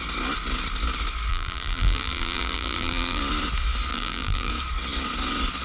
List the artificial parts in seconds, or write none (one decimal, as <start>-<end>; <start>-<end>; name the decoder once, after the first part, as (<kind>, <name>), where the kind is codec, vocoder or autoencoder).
1.3-3.2 (vocoder, BigVGAN v2); 3.9-4.5